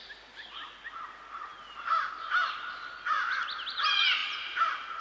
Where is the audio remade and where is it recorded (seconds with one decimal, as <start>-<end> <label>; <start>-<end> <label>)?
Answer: 0.0-5.0 recorded